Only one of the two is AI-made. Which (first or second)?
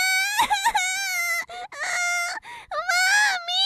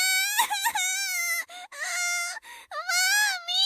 second